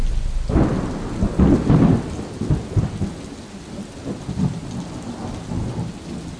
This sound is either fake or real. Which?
real